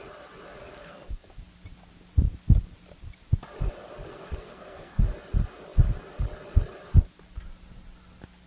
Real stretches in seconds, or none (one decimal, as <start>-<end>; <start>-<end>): 0.0-0.7; 1.4-4.1; 5.0-8.5